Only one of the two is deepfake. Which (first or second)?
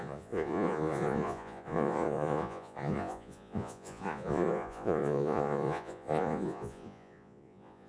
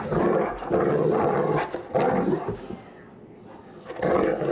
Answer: first